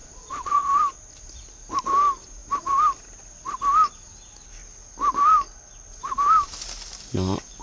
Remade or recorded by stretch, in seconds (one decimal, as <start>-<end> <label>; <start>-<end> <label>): 0.0-0.8 remade; 0.8-7.6 recorded